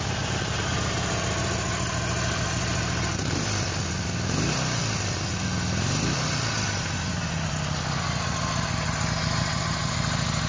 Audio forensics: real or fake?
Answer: real